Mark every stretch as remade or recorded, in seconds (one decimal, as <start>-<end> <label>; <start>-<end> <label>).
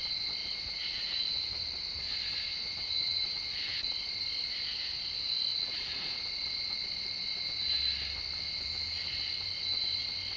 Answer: 0.0-0.4 recorded; 0.4-1.5 remade; 1.5-2.5 recorded; 2.5-4.1 remade; 4.1-5.5 recorded; 5.5-6.2 remade; 6.2-10.4 recorded